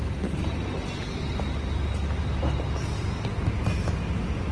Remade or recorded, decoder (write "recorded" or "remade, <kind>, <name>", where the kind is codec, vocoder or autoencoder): recorded